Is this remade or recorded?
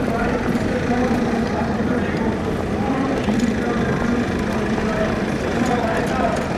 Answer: recorded